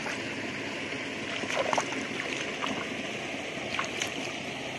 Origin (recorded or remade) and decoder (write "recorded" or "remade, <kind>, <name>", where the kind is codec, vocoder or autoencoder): recorded